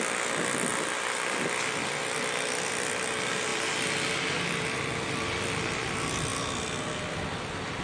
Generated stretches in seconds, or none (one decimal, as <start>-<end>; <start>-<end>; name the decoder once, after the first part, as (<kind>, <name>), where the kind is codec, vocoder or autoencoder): none